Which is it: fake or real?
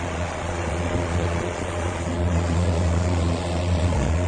fake